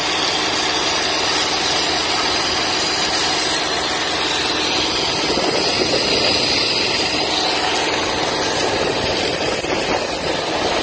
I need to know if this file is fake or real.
real